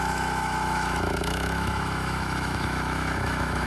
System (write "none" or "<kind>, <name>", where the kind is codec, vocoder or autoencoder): autoencoder, DAC-VAE